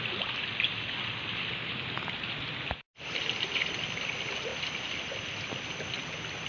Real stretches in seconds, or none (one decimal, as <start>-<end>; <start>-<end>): 0.0-6.5